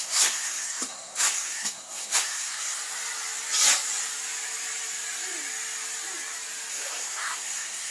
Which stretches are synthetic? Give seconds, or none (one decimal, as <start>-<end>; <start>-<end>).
0.0-2.8; 6.7-7.9